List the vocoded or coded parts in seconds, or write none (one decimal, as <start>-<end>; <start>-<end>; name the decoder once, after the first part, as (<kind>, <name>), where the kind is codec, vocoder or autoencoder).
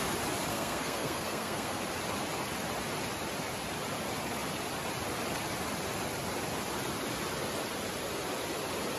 0.5-1.8 (codec, SNAC)